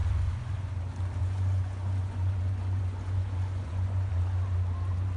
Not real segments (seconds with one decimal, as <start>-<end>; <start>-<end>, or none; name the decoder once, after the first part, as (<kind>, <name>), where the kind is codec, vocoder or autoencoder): 0.0-0.7 (vocoder, Vocos); 1.2-4.1